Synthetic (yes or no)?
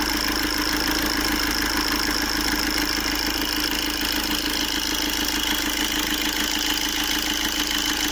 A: no